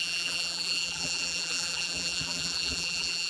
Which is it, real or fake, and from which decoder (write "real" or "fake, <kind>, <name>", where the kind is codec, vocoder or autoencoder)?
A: fake, vocoder, BigVGAN v2